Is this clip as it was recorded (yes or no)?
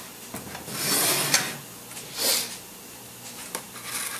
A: yes